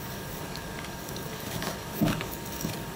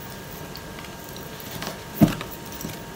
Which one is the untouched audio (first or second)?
second